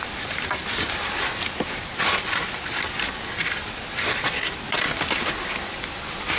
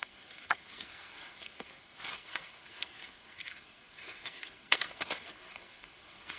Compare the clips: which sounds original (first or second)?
first